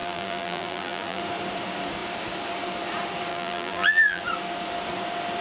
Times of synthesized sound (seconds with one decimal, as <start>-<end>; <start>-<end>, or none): 0.0-1.2; 3.3-4.2